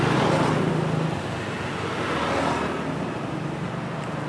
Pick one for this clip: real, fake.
real